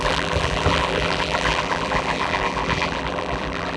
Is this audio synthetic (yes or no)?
yes